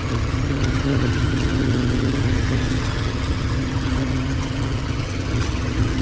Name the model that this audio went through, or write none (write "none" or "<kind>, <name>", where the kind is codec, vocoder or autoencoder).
vocoder, HiFi-GAN